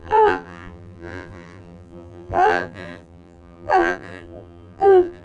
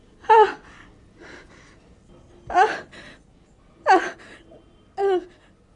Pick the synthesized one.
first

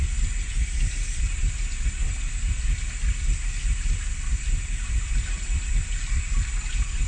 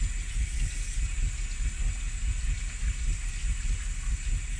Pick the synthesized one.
first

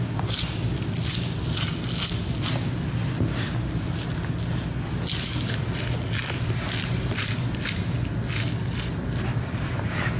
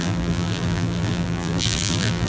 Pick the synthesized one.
second